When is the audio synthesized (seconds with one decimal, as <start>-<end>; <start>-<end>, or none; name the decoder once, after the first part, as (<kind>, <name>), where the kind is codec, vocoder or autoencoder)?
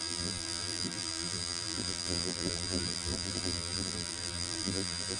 0.0-5.2 (vocoder, BigVGAN v2)